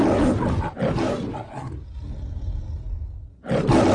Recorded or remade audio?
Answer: recorded